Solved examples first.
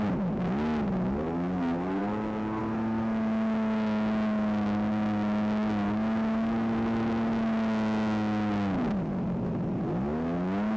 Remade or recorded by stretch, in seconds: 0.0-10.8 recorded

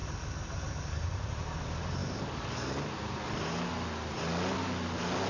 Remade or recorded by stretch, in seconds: 0.0-5.3 recorded

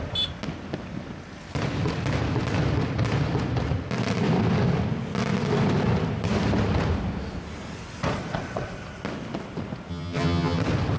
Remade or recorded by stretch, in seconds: 0.0-9.9 recorded; 9.9-10.6 remade; 10.6-11.0 recorded

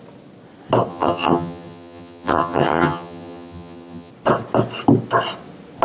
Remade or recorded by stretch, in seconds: 0.0-0.9 recorded; 0.9-4.1 remade; 4.1-5.8 recorded

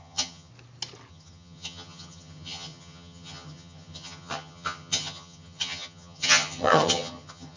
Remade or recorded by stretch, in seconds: 0.0-0.5 remade; 0.5-1.1 recorded; 1.1-7.6 remade

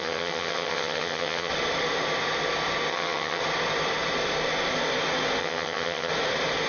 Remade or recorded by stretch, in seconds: 0.0-1.5 remade; 1.5-2.9 recorded; 2.9-3.4 remade; 3.4-5.4 recorded; 5.4-6.1 remade; 6.1-6.7 recorded

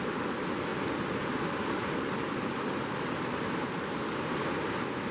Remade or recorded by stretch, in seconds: 0.0-5.1 recorded